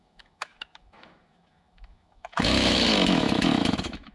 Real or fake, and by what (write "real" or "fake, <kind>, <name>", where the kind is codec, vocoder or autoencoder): fake, autoencoder, DAC-VAE